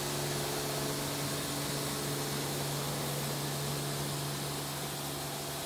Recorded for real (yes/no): yes